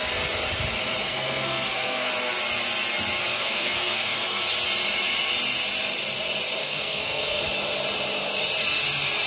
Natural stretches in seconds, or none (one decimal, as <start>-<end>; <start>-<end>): 0.0-1.0; 2.1-3.3; 4.4-6.6; 7.4-9.3